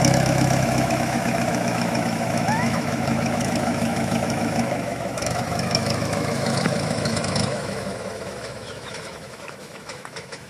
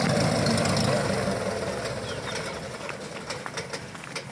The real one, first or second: second